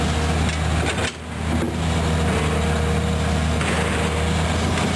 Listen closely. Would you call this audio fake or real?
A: real